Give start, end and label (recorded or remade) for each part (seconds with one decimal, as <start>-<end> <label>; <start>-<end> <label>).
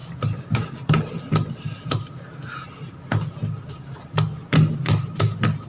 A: 0.0-5.7 recorded